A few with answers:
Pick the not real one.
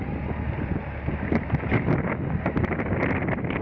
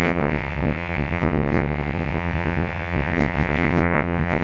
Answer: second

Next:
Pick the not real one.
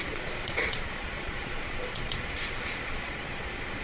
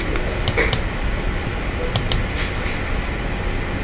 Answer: first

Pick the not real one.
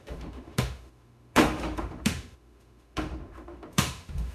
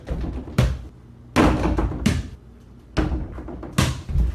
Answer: first